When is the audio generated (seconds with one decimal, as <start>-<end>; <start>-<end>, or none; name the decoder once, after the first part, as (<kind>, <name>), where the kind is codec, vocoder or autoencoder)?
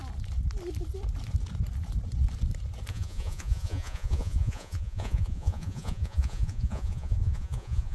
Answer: 2.9-7.9 (vocoder, Vocos)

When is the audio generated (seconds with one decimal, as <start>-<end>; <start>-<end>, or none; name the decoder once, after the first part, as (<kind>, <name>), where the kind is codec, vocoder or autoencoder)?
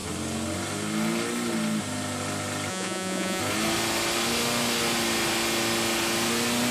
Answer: 2.7-3.4 (vocoder, Vocos)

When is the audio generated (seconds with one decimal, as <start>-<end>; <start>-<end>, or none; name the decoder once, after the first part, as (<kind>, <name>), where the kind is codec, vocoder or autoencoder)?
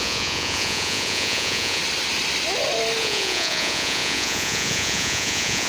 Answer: 0.0-1.8 (vocoder, Vocos); 3.0-5.7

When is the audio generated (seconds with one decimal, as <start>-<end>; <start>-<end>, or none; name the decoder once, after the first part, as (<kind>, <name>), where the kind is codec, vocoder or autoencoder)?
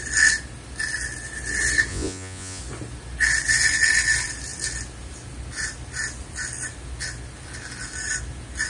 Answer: 1.9-2.6 (vocoder, Vocos)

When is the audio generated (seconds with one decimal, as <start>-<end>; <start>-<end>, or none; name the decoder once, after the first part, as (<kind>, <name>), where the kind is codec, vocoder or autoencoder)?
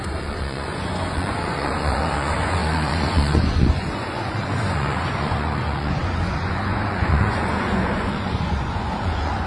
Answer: 0.0-9.5 (vocoder, Vocos)